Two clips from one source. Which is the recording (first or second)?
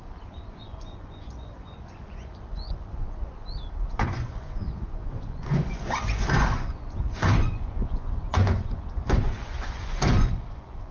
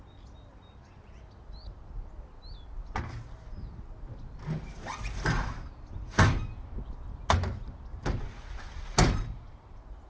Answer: second